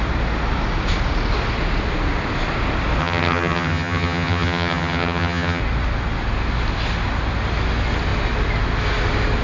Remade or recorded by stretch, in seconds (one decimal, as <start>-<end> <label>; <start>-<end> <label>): 0.0-3.0 recorded; 3.0-5.6 remade; 5.6-9.4 recorded